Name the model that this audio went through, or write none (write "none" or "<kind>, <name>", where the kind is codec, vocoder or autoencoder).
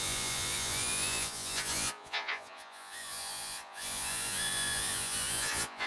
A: vocoder, Vocos